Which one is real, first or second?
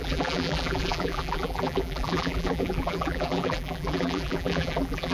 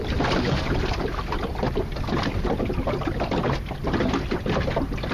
second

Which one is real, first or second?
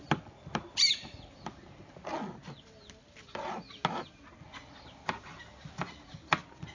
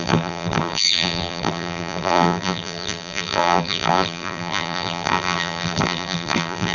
first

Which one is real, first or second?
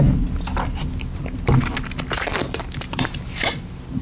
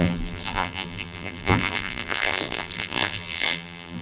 first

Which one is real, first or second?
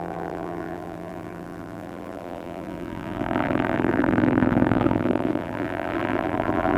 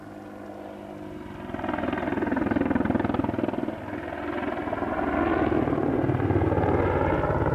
second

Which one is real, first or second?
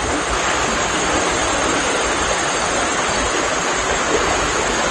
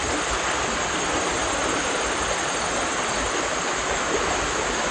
first